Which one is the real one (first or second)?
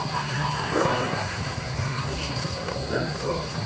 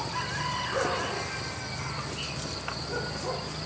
second